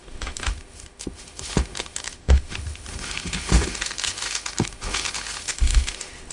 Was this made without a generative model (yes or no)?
no